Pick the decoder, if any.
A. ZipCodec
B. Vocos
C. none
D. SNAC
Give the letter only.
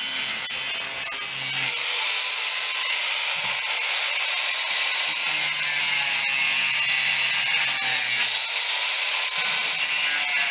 C